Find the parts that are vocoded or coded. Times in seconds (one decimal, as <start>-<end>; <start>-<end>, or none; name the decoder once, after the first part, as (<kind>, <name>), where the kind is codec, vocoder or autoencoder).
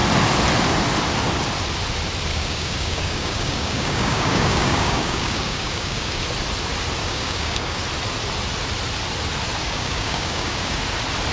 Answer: 2.3-6.2 (codec, DAC); 7.0-7.8; 9.6-10.8